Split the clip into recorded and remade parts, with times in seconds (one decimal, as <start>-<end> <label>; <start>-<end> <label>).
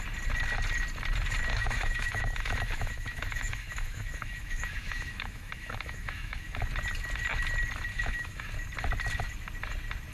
0.0-1.5 recorded; 1.5-6.6 remade; 6.6-7.9 recorded; 7.9-8.5 remade; 8.5-10.1 recorded